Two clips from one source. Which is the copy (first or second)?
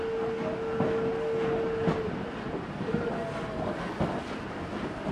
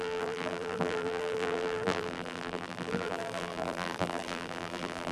second